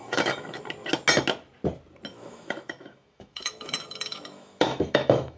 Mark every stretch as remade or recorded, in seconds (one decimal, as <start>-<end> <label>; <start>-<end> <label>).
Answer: 0.0-0.6 remade; 0.6-2.1 recorded; 2.1-5.4 remade